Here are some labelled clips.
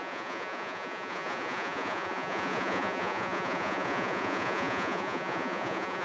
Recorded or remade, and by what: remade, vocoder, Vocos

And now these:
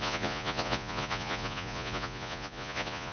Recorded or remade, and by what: remade, vocoder, Vocos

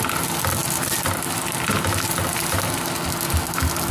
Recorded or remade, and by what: recorded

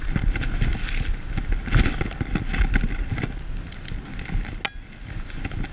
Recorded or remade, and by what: recorded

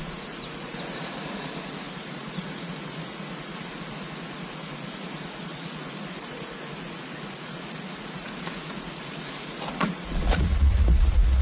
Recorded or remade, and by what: remade, vocoder, Vocos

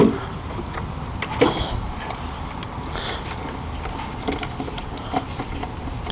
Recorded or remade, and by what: recorded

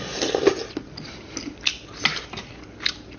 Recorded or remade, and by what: recorded